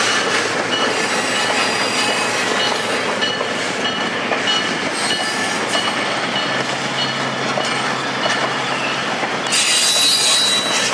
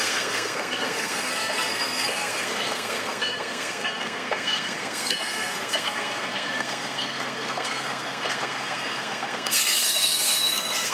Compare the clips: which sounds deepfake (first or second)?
second